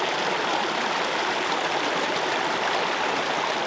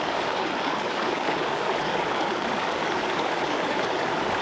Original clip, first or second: first